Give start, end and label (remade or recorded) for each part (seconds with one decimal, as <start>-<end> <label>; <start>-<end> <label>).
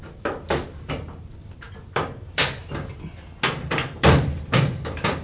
0.0-0.6 recorded; 0.6-2.6 remade; 2.6-3.6 recorded; 3.6-5.2 remade